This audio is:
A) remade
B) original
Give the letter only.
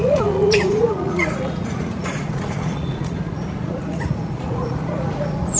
A